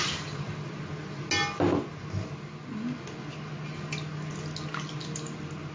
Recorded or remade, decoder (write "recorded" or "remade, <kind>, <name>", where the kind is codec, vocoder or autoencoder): recorded